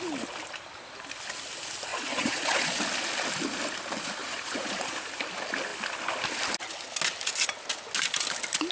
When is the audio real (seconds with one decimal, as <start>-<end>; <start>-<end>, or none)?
0.0-1.9; 2.8-4.2; 4.9-8.7